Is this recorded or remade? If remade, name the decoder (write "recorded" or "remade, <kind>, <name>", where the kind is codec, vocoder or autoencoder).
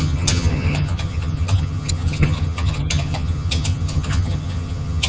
remade, vocoder, HiFi-GAN